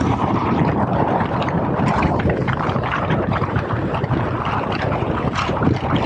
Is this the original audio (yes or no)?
yes